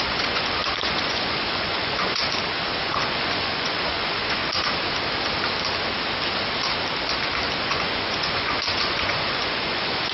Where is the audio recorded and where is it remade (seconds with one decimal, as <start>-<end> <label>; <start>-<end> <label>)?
0.0-2.2 remade; 2.2-2.8 recorded; 2.8-4.4 remade; 4.4-7.6 recorded; 7.6-10.1 remade